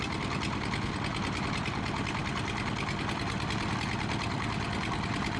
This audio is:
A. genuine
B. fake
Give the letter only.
A